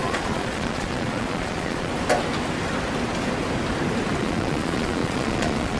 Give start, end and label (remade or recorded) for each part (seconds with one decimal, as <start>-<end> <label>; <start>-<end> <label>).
0.0-1.9 remade; 1.9-4.2 recorded; 4.2-5.8 remade